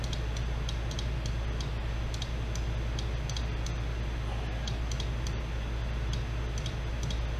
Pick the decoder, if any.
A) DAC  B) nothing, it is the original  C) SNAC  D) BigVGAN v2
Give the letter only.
B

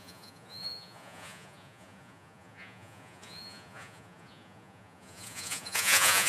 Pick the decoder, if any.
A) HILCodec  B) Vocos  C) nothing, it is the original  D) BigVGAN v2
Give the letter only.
B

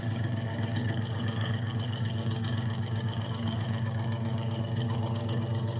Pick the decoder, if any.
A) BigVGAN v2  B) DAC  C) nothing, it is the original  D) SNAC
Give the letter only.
B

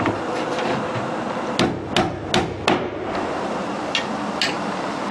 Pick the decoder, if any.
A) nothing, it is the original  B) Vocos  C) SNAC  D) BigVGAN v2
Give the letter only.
A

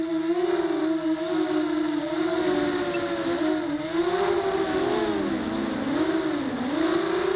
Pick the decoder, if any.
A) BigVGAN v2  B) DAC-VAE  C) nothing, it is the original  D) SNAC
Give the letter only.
C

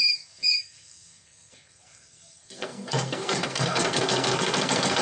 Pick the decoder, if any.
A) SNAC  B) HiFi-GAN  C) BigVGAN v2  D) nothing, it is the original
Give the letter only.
A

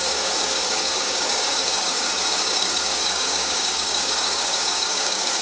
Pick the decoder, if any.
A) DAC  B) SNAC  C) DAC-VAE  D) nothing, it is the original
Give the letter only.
A